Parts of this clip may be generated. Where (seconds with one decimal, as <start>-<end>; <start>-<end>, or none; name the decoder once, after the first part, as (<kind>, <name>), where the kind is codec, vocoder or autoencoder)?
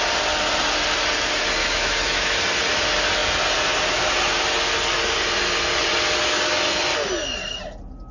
1.6-2.4 (autoencoder, DAC-VAE)